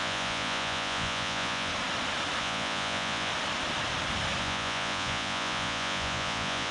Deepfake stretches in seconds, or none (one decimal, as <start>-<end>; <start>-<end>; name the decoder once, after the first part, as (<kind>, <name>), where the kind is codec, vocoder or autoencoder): 0.0-1.7 (vocoder, Vocos); 2.4-3.3; 4.4-6.7

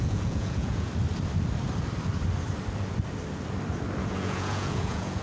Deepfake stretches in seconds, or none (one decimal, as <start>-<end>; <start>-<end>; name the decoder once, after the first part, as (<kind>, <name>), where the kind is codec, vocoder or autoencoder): 0.0-0.9 (vocoder, Vocos); 4.0-5.2